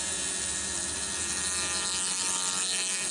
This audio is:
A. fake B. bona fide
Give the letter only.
B